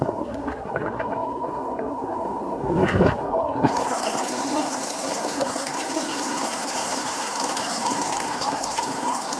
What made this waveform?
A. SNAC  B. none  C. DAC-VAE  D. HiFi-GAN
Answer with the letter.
A